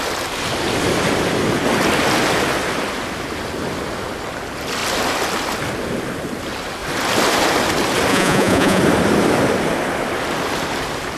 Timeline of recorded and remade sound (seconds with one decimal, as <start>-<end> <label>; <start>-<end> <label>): 0.0-8.1 recorded; 8.1-8.8 remade; 8.8-11.2 recorded